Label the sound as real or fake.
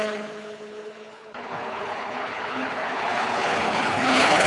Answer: fake